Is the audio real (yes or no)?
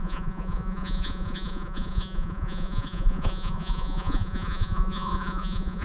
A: no